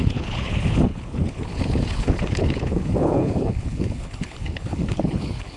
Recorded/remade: remade